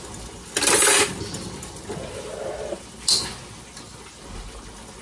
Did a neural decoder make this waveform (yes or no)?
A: no